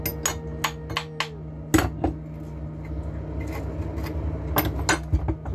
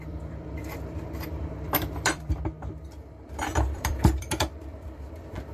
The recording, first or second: first